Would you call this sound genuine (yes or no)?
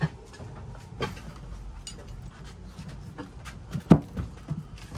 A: yes